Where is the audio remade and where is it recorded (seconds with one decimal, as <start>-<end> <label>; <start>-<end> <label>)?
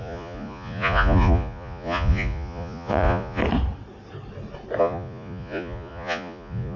0.0-3.4 remade; 3.4-4.8 recorded; 4.8-6.8 remade